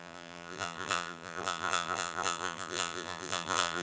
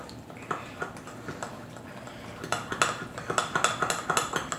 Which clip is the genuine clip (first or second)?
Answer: second